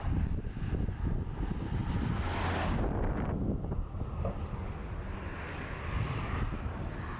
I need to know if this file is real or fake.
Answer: real